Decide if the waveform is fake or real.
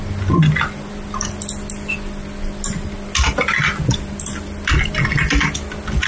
real